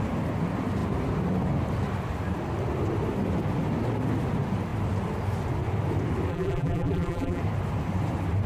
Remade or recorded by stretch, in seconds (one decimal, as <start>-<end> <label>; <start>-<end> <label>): 0.0-6.3 recorded; 6.3-7.4 remade; 7.4-8.5 recorded